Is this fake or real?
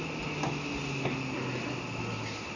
real